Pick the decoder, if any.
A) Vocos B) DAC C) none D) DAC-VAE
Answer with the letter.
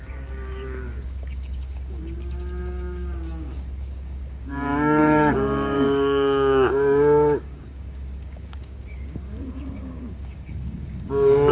B